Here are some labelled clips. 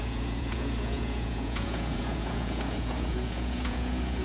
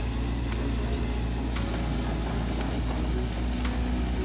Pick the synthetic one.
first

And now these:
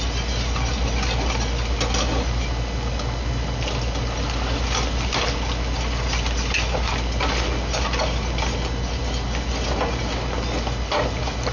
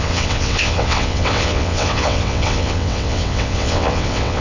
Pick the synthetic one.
second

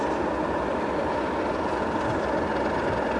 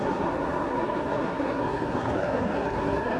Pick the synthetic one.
second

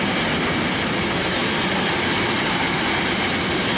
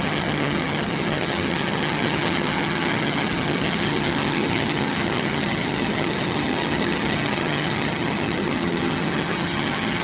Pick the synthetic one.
second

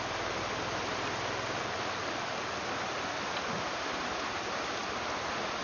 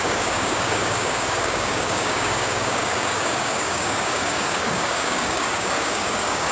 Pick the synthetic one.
second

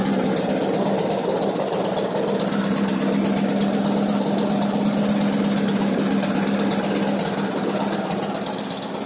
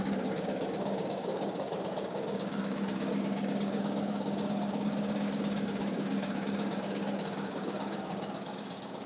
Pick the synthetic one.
second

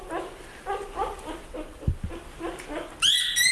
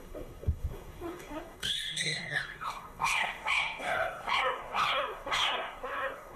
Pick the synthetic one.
second